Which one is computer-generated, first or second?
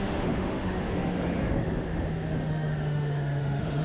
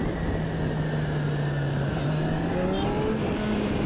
first